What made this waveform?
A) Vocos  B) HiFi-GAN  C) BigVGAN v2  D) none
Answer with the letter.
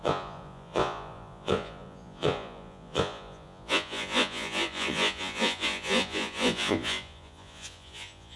A